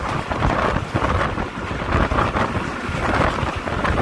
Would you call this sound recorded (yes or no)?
yes